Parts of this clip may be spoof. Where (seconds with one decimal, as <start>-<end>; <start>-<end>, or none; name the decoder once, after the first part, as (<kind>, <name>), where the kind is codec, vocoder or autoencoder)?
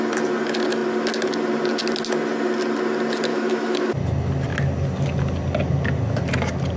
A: 3.3-3.9 (autoencoder, DAC-VAE)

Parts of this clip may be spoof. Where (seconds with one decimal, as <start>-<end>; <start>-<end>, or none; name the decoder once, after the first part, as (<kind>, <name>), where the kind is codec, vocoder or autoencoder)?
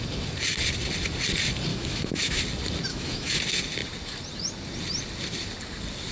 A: 1.7-2.4 (autoencoder, DAC-VAE); 2.9-3.4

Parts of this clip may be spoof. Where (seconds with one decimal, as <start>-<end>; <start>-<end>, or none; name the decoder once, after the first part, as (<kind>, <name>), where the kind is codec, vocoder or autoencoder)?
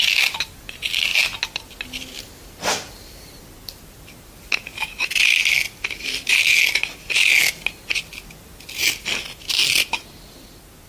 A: none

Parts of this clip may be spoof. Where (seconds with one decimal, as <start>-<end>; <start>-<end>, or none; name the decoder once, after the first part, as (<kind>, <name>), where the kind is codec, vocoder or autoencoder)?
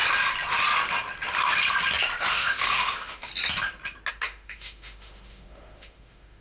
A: 2.3-3.3 (autoencoder, DAC-VAE); 4.1-6.4